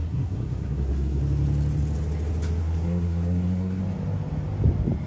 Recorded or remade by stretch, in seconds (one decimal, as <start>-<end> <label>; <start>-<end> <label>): 0.0-1.2 remade; 1.2-2.6 recorded; 2.6-3.8 remade; 3.8-5.1 recorded